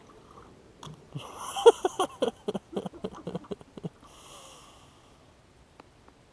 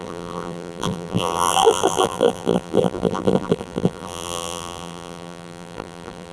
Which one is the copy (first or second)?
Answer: second